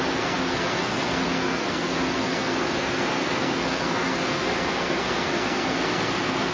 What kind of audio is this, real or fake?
fake